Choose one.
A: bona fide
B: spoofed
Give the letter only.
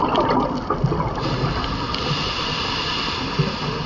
A